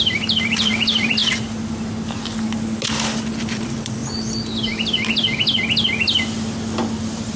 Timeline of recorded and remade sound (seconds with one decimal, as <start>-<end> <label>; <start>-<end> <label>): 0.0-1.2 remade; 1.2-3.4 recorded; 3.4-4.0 remade; 4.0-6.6 recorded; 6.6-7.4 remade